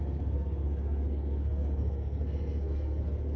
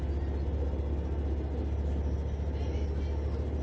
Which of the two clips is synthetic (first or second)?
first